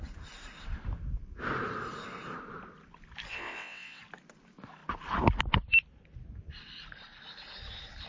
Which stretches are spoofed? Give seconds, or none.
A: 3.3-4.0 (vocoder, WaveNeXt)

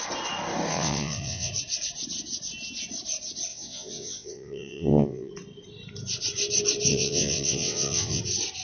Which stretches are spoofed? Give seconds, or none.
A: 0.7-1.5 (vocoder, WaveNeXt); 3.5-5.3; 6.9-8.2

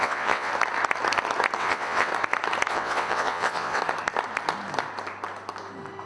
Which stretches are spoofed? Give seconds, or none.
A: 0.0-0.5 (vocoder, WaveNeXt); 1.6-2.1; 2.7-3.8